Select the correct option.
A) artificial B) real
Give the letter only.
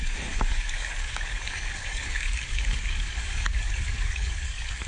A